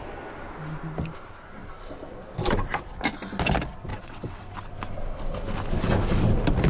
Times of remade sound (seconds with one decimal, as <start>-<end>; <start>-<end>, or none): 3.9-4.5